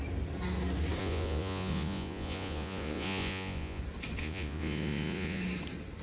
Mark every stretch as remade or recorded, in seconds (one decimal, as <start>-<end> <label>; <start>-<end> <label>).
0.0-1.0 recorded; 1.0-3.8 remade; 3.8-4.2 recorded; 4.2-5.4 remade; 5.4-6.0 recorded